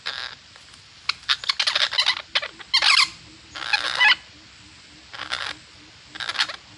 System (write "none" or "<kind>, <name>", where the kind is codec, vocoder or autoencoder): none